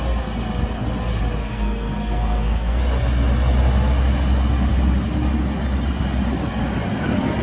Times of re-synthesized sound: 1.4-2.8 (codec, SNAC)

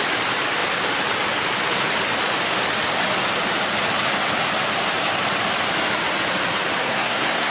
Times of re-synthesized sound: 6.8-7.5 (codec, SNAC)

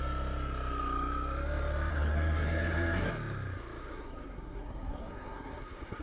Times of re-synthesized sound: 1.9-3.1 (codec, SNAC); 3.8-6.0

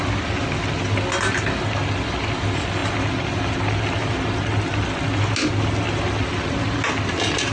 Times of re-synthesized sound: none

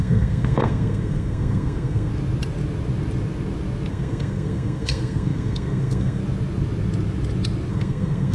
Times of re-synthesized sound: 0.0-2.1 (codec, SNAC); 3.9-6.2; 7.7-8.3

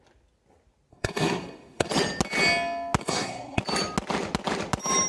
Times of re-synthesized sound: 0.9-1.9 (codec, SNAC); 3.0-3.6

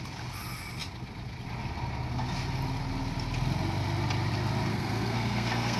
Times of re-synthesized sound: 4.7-5.8 (codec, SNAC)